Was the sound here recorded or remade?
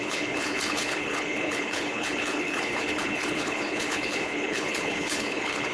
remade